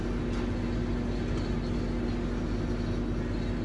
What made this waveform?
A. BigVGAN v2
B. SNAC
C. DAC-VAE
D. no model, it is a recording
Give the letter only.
D